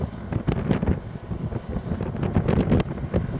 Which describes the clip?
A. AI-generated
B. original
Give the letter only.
B